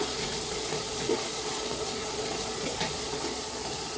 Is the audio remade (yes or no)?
yes